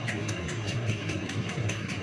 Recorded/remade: remade